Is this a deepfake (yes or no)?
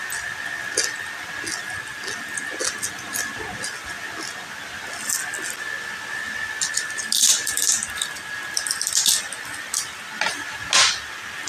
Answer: no